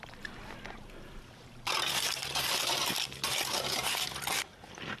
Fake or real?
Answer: fake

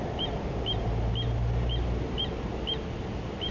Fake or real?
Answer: real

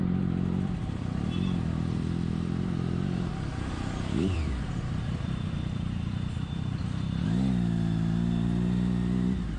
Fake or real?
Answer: fake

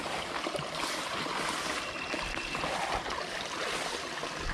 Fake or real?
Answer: real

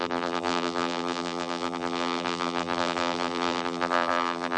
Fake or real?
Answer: fake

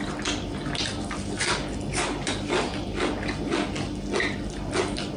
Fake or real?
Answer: real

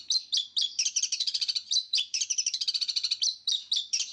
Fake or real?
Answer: fake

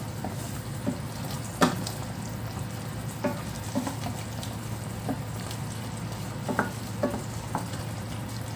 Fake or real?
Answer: fake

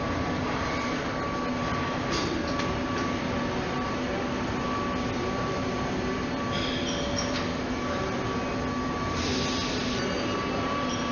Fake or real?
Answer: real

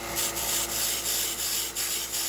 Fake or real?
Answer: real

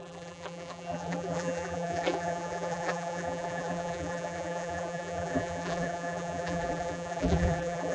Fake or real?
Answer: fake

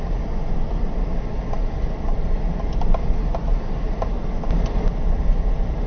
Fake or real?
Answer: real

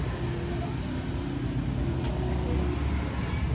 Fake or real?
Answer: real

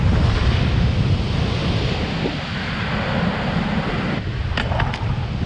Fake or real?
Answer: real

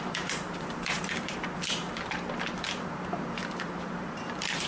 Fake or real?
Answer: fake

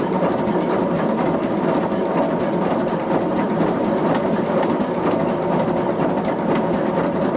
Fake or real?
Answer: fake